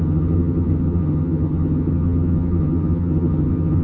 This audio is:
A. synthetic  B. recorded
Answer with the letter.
A